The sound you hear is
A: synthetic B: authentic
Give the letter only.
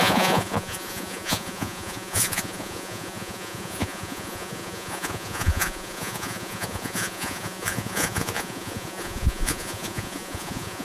A